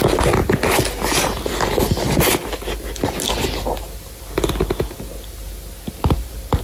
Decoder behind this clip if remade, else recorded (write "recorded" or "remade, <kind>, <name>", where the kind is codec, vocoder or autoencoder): recorded